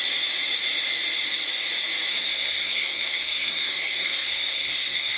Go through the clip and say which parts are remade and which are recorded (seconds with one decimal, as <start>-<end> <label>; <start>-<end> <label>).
0.0-2.1 recorded; 2.1-5.2 remade